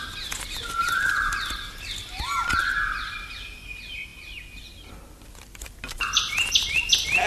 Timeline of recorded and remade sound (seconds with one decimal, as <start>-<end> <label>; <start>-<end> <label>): 0.0-7.3 recorded